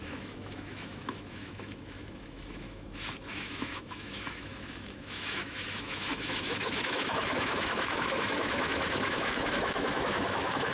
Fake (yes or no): yes